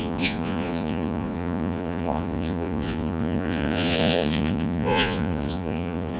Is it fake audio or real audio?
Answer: fake